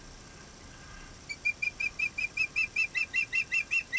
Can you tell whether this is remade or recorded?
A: recorded